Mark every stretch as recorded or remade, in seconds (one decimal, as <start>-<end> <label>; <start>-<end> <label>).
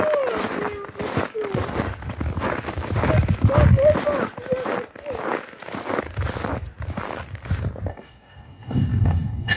0.0-7.9 recorded; 7.9-9.6 remade